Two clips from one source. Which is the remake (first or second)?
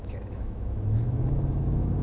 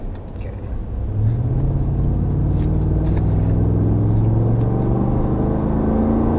first